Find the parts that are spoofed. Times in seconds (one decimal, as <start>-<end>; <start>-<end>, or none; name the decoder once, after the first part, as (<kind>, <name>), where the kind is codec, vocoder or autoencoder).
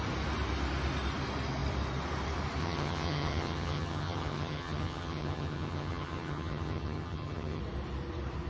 2.6-7.6 (vocoder, HiFi-GAN)